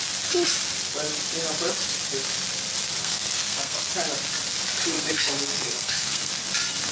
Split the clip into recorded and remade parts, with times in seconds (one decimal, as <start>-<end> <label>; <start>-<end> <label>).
0.0-3.0 recorded; 3.0-3.9 remade; 3.9-4.9 recorded; 4.9-6.3 remade; 6.3-6.9 recorded